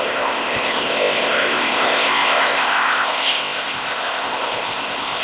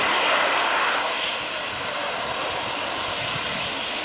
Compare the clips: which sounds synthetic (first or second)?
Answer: first